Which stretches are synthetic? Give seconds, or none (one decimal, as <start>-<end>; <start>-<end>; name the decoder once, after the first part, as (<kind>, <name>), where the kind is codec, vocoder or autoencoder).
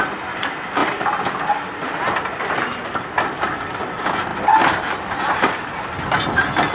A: none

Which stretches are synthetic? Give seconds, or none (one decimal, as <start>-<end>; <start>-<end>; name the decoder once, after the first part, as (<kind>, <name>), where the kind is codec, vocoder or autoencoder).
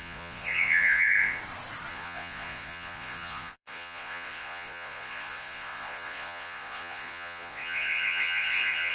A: 0.0-1.4 (vocoder, Vocos); 1.9-8.9